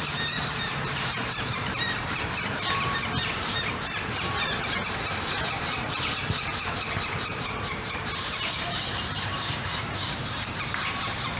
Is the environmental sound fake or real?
fake